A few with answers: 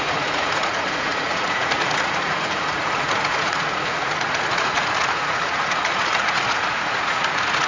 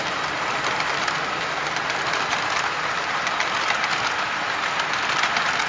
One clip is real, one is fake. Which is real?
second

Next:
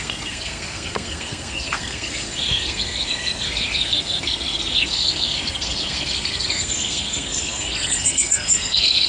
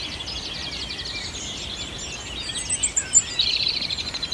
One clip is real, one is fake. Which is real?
second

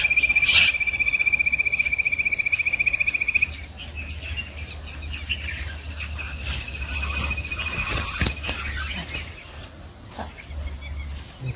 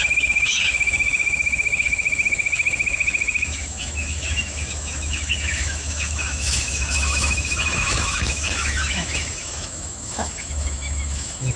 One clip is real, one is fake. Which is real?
first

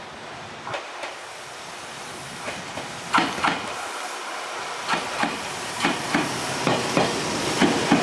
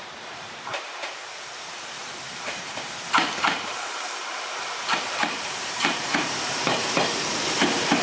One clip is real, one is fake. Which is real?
first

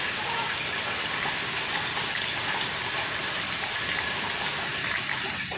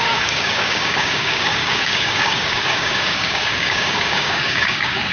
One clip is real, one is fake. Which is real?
first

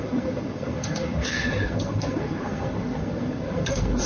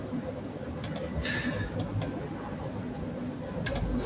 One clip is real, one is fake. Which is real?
second